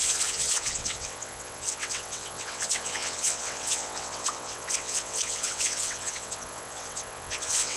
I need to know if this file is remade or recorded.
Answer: remade